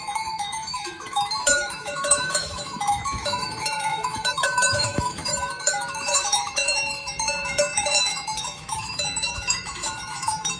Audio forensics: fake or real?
fake